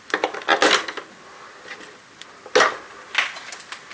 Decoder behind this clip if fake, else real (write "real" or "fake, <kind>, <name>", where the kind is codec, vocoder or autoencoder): real